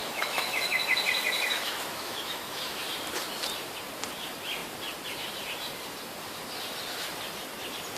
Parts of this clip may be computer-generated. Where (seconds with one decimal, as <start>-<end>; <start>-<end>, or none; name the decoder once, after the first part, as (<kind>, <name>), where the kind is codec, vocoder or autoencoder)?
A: 0.0-0.8 (autoencoder, DAC-VAE); 1.5-2.8